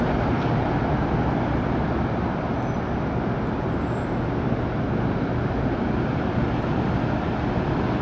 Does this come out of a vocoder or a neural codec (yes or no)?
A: no